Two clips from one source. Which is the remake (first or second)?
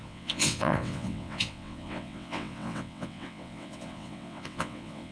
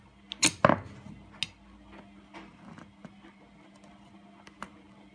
first